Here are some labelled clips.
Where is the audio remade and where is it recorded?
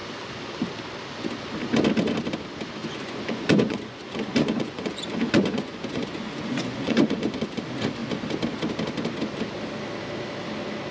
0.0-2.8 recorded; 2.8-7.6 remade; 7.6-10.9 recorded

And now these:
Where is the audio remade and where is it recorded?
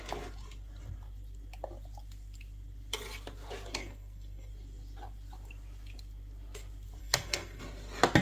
0.0-3.8 recorded; 3.8-4.5 remade; 4.5-7.0 recorded; 7.0-7.6 remade; 7.6-8.2 recorded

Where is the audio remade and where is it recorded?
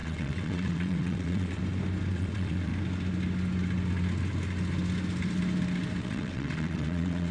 0.0-1.6 remade; 1.6-2.1 recorded; 2.1-2.7 remade; 2.7-6.0 recorded; 6.0-7.3 remade